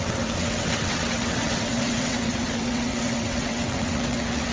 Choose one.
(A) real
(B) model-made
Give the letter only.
B